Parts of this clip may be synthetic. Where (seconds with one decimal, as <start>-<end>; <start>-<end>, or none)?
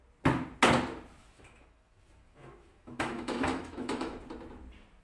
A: 1.2-4.2